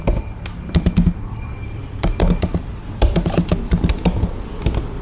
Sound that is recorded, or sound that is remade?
remade